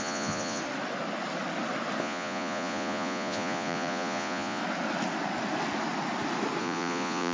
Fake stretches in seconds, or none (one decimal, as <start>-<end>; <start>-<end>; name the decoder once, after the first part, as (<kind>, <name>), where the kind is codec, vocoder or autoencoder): 0.0-0.6 (vocoder, Vocos); 2.0-4.6; 6.6-7.3